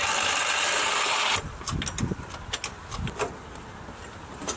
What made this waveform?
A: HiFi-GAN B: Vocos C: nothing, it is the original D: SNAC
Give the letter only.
C